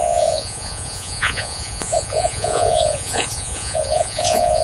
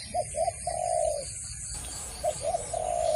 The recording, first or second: second